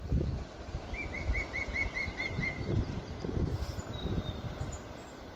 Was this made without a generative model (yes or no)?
yes